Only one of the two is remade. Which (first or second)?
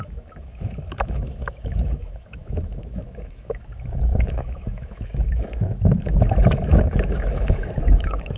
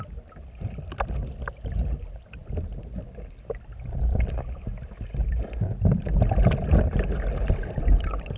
first